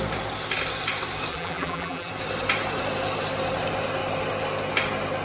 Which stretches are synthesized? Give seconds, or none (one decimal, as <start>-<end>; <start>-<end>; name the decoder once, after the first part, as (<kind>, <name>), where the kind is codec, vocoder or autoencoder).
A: 1.3-2.1 (vocoder, BigVGAN v2)